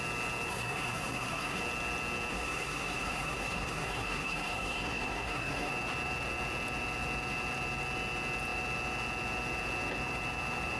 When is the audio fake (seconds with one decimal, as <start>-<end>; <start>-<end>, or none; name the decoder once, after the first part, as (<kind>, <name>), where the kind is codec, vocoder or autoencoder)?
0.5-1.6 (codec, SNAC); 2.3-5.7